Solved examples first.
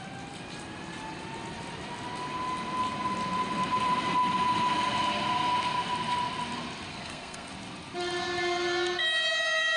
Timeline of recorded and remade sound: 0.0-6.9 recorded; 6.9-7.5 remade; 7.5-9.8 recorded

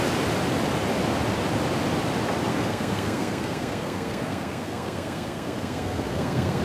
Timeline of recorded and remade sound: 0.0-2.5 recorded; 2.5-6.6 remade

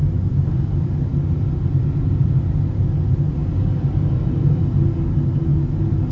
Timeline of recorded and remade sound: 0.0-6.1 recorded

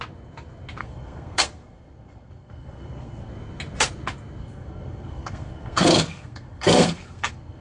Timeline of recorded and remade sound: 0.0-0.8 recorded; 0.8-3.3 remade; 3.3-4.4 recorded; 4.4-7.6 remade